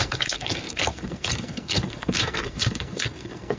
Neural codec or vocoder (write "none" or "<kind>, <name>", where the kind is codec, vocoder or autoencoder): codec, SNAC